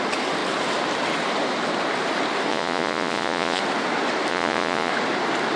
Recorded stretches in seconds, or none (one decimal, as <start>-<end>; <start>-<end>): 0.0-2.5; 3.6-4.3; 4.9-5.6